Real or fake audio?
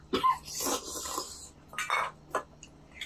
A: real